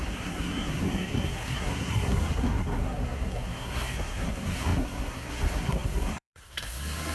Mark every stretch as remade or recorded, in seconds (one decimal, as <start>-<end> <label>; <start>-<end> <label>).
0.0-7.1 remade